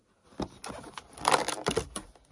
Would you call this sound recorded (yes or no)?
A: yes